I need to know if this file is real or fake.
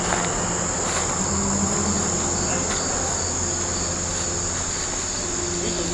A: real